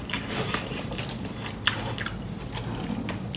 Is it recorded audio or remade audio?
remade